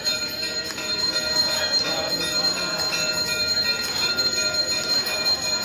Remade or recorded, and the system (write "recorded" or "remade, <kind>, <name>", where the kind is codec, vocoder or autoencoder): recorded